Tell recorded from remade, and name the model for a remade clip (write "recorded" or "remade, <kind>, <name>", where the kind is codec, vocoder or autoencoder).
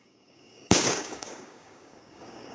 remade, codec, DAC